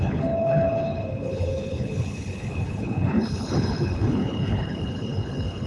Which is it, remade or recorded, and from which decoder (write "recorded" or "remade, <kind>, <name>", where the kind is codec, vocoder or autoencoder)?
remade, codec, HILCodec